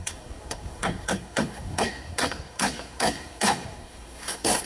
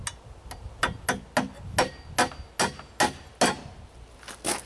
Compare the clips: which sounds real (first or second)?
second